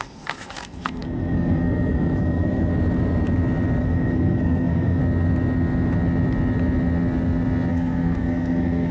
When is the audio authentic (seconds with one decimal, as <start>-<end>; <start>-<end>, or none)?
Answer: 2.7-3.8; 5.0-7.7